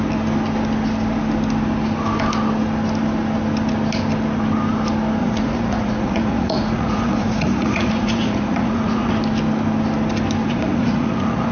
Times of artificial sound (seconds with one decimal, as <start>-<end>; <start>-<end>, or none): 5.2-9.1; 10.4-11.5